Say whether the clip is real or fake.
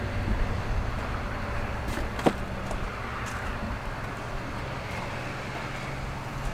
real